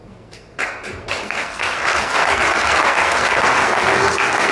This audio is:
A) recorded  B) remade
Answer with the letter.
B